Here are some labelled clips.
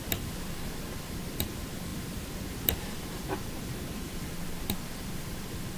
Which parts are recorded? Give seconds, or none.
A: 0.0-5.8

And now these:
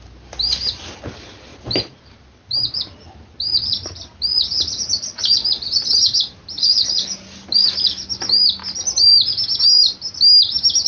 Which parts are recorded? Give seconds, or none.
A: 0.0-4.3; 6.2-10.9

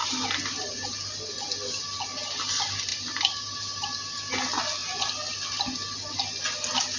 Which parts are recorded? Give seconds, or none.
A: 0.0-2.9; 4.3-7.0

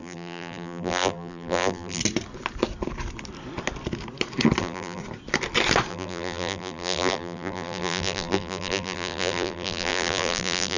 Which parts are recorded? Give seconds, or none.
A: 2.0-4.6; 5.0-5.9

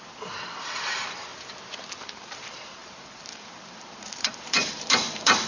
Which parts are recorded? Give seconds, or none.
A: 1.3-2.0

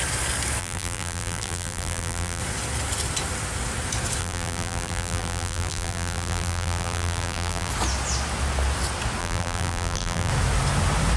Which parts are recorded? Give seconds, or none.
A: 0.0-0.6; 2.4-4.2; 7.7-9.2; 10.3-11.2